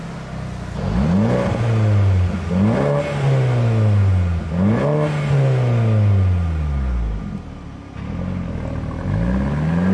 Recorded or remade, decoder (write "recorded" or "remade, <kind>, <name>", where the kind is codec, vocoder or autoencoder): recorded